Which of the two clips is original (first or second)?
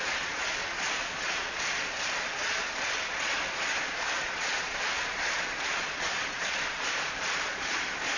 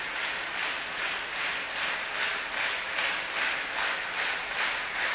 second